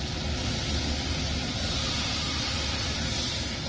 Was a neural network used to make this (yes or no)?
no